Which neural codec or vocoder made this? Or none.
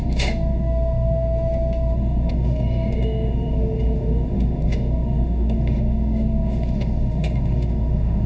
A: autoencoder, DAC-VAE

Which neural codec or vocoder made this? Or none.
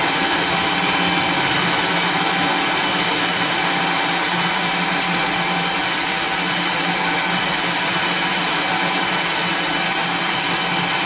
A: none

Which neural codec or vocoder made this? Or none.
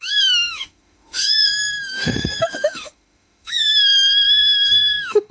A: autoencoder, DAC-VAE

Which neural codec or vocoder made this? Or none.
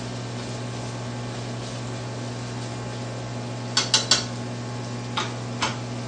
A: none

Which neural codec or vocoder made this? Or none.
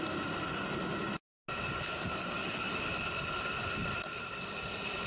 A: none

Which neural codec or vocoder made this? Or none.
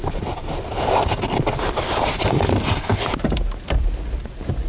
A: none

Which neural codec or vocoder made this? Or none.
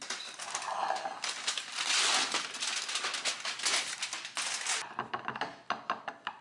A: none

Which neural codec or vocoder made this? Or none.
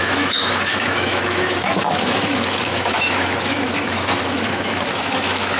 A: autoencoder, DAC-VAE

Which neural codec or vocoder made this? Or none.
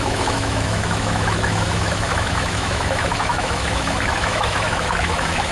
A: autoencoder, DAC-VAE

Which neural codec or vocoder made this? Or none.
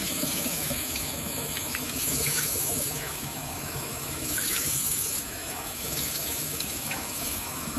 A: autoencoder, DAC-VAE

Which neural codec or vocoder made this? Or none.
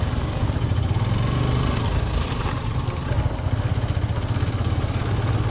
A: none